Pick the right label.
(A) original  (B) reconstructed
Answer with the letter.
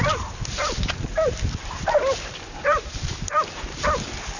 A